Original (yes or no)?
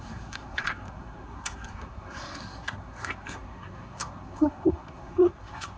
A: no